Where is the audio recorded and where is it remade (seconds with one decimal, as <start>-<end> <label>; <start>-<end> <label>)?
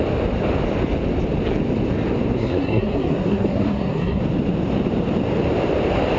0.0-2.4 recorded; 2.4-4.2 remade; 4.2-6.2 recorded